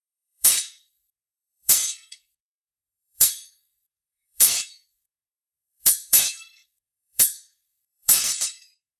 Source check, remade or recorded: remade